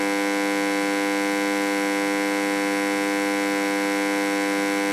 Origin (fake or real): real